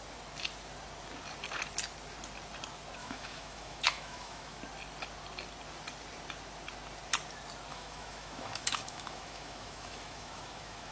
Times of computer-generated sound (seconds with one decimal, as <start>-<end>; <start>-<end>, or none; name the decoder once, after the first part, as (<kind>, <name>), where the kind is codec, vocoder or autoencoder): 3.0-4.6 (autoencoder, DAC-VAE); 7.7-10.9

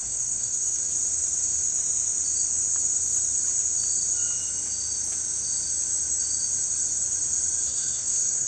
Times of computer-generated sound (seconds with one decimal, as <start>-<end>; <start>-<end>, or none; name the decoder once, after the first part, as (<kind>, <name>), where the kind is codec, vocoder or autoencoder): 0.0-0.9 (codec, SNAC); 7.7-8.5

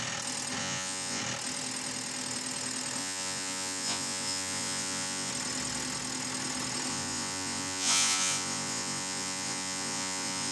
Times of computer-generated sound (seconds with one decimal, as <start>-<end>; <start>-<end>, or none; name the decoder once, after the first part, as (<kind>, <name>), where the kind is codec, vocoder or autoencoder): 0.6-1.2 (vocoder, Vocos); 3.0-5.3; 6.9-10.5

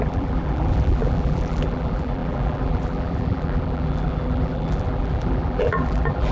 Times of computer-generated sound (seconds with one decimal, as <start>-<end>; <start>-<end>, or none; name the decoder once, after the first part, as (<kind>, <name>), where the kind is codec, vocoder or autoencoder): 0.0-6.3 (vocoder, BigVGAN v2)

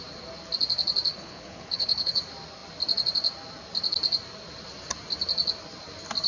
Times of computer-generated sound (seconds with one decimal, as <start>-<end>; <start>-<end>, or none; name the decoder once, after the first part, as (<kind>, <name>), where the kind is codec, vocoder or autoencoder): 1.1-2.2 (codec, HILCodec)

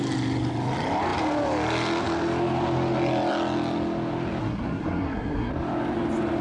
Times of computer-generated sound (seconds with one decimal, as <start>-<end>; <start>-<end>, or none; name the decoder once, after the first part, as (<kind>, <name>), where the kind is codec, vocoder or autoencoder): 4.4-5.5 (codec, SNAC)

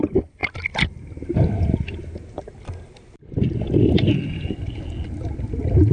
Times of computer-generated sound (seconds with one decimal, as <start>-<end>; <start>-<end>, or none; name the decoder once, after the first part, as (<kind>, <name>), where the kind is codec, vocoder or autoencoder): none